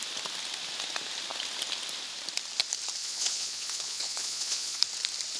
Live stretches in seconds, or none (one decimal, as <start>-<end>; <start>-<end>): 0.0-3.0; 4.8-5.4